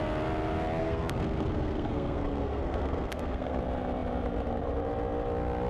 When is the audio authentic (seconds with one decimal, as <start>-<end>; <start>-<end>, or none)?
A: 0.0-0.8; 3.6-5.7